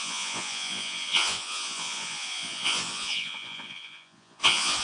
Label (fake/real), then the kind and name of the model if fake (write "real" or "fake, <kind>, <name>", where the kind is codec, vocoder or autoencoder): fake, vocoder, Vocos